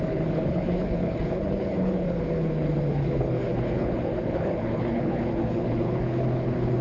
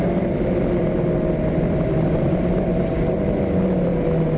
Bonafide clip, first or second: second